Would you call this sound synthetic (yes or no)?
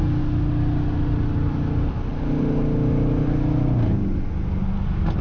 no